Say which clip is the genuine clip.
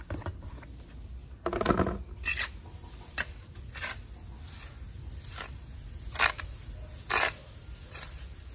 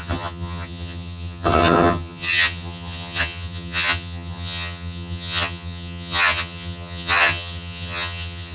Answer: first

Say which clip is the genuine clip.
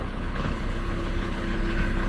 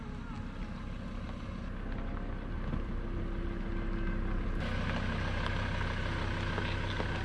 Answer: second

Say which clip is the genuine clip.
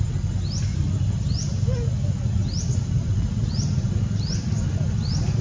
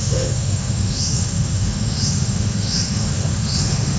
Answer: first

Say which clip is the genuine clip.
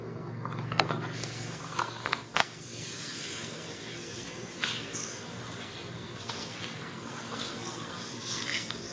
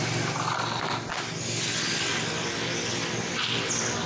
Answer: second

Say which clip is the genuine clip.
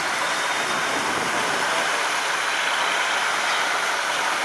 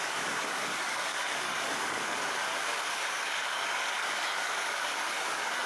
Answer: first